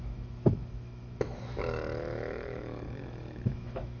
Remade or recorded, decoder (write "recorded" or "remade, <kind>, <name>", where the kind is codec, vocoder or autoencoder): remade, autoencoder, DAC-VAE